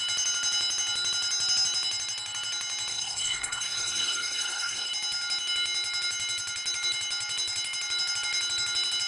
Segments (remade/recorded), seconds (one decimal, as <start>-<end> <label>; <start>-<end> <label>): 0.0-2.9 recorded; 2.9-4.9 remade; 4.9-9.1 recorded